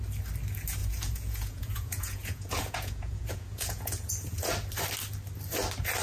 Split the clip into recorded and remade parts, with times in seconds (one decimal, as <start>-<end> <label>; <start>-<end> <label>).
0.0-0.8 recorded; 0.8-4.4 remade; 4.4-6.0 recorded